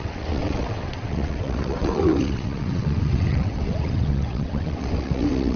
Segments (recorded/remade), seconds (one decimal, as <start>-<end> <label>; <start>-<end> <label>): 0.0-5.6 remade